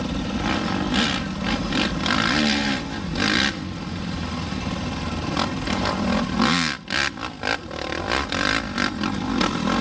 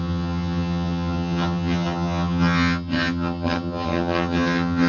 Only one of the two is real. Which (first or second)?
first